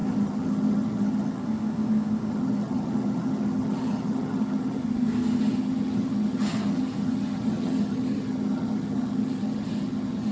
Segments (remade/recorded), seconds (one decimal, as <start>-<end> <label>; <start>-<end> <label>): 0.0-1.4 remade; 1.4-2.3 recorded; 2.3-4.8 remade; 4.8-5.4 recorded; 5.4-10.3 remade